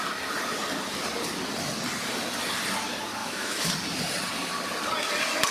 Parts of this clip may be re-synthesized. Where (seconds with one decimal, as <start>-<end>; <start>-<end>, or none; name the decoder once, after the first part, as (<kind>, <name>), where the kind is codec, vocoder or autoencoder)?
3.2-3.7 (autoencoder, DAC-VAE)